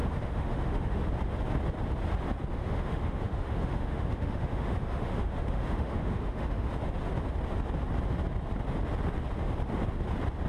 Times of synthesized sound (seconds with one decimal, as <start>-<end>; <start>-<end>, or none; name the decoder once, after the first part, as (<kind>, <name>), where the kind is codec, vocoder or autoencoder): 0.0-1.0 (autoencoder, DAC-VAE); 2.5-6.7